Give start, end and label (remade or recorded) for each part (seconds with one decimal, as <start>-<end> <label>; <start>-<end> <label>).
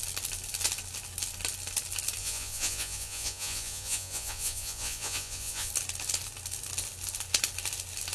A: 0.0-2.2 recorded; 2.2-5.7 remade; 5.7-8.1 recorded